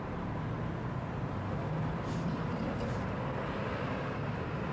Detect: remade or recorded recorded